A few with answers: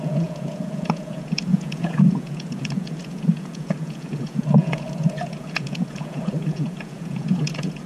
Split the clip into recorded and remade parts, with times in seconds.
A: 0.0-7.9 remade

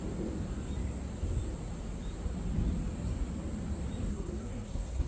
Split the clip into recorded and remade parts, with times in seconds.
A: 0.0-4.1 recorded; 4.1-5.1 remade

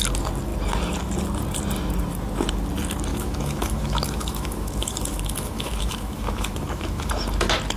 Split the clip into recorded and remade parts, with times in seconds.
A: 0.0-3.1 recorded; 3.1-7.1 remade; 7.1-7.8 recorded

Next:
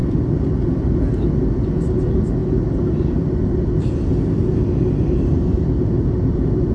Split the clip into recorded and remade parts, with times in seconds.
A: 0.0-6.7 recorded

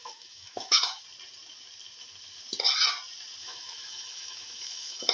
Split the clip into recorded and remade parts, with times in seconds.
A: 0.0-1.0 remade; 1.0-3.4 recorded; 3.4-5.1 remade

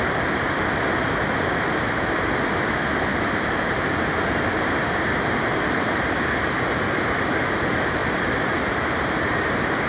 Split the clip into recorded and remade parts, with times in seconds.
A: 0.0-3.1 recorded; 3.1-3.9 remade; 3.9-8.0 recorded; 8.0-9.9 remade